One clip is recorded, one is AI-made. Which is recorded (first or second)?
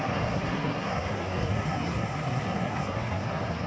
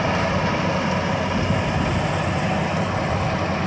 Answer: second